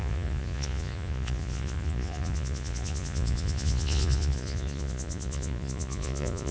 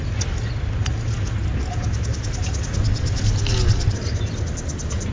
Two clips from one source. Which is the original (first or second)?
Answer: second